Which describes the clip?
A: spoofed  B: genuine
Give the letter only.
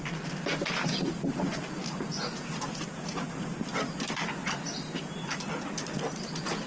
B